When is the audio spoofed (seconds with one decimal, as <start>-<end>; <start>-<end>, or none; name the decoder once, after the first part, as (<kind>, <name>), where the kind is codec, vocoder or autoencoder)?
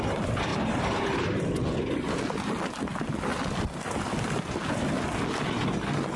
0.5-2.2 (vocoder, BigVGAN v2)